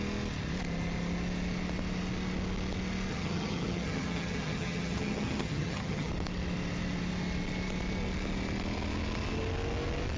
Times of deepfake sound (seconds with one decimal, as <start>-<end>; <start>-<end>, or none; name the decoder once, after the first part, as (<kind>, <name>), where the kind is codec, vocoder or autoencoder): 3.1-6.1 (vocoder, HiFi-GAN)